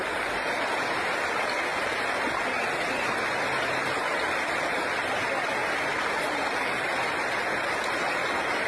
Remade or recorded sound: recorded